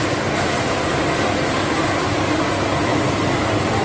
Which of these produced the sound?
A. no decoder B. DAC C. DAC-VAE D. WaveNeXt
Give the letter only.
A